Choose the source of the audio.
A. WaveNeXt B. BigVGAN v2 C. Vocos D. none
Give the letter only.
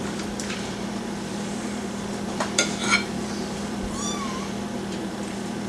B